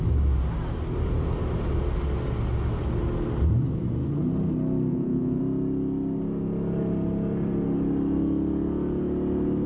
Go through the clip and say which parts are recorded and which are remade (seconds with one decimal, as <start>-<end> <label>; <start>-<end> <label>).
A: 0.0-4.9 recorded; 4.9-5.4 remade; 5.4-9.7 recorded